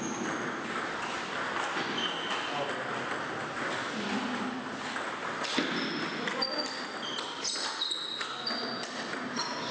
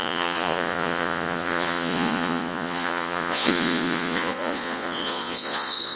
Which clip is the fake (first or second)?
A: second